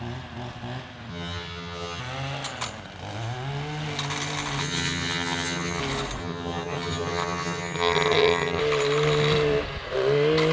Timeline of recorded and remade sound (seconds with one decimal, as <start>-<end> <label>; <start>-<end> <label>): 0.0-1.1 recorded; 1.1-2.0 remade; 2.0-4.6 recorded; 4.6-5.8 remade; 5.8-6.2 recorded; 6.2-8.6 remade; 8.6-10.5 recorded